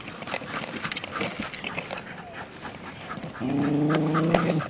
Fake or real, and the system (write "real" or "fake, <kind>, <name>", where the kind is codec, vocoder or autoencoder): real